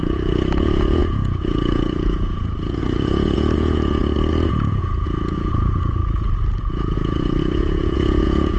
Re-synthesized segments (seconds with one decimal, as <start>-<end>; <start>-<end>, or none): 0.0-4.0; 4.5-6.0; 6.6-8.6